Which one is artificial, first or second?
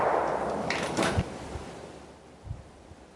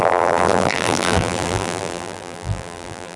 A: second